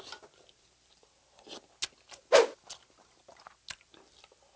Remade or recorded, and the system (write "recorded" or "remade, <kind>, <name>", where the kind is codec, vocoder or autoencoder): recorded